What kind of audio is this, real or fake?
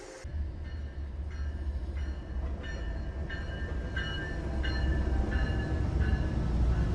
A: real